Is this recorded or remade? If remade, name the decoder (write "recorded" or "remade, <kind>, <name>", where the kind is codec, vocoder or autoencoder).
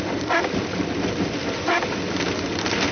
remade, vocoder, BigVGAN v2